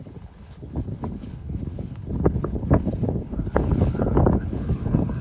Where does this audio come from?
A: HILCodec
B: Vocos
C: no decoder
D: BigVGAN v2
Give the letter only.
A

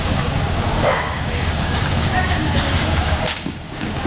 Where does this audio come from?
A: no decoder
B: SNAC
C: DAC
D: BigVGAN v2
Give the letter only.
C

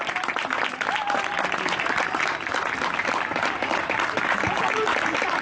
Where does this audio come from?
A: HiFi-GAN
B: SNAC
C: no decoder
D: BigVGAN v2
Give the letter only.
C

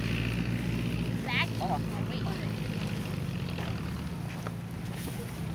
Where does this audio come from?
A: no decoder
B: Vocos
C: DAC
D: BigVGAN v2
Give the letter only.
A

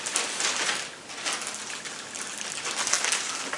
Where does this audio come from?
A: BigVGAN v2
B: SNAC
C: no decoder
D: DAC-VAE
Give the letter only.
C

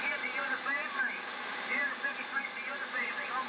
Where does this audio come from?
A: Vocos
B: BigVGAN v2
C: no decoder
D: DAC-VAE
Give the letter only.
C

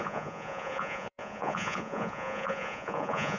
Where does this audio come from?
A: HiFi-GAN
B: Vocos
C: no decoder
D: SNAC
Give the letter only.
B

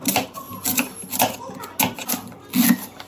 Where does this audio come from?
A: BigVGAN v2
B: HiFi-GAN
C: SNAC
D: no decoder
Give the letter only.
D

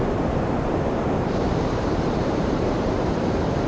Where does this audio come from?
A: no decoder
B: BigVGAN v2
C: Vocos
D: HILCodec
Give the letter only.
B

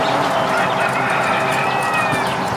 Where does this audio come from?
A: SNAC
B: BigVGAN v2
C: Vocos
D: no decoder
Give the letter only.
D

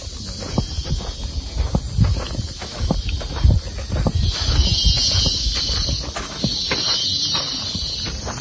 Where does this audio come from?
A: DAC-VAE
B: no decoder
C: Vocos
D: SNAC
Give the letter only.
B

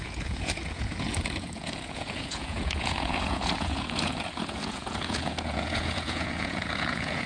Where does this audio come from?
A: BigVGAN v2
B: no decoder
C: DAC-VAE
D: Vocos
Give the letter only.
D